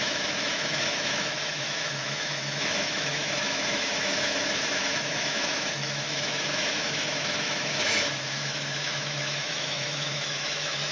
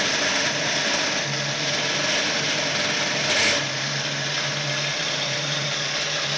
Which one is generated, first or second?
first